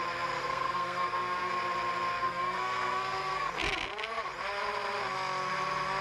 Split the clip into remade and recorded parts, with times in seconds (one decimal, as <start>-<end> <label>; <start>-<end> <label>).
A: 0.0-0.4 recorded; 0.4-1.5 remade; 1.5-2.2 recorded; 2.2-3.5 remade; 3.5-6.0 recorded